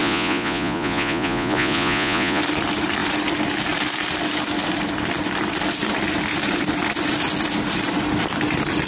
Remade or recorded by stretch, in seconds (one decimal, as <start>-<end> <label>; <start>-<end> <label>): 0.0-2.4 remade; 2.4-8.9 recorded